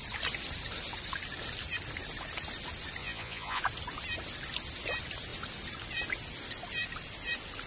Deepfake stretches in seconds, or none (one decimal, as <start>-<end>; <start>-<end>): 3.0-3.6